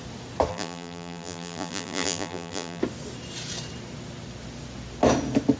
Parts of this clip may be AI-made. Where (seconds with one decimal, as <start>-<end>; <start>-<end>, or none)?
0.5-2.8